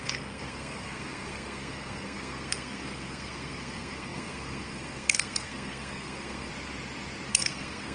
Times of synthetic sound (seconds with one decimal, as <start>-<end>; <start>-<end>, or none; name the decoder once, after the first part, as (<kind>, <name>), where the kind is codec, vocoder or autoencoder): 0.0-6.5 (codec, SNAC); 7.3-7.9